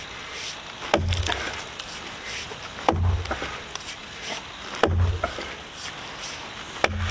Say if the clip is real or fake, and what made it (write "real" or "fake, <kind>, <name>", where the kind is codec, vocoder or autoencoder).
real